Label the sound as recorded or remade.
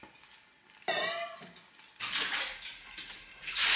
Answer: recorded